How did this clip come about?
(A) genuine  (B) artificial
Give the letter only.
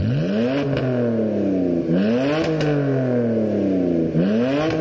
A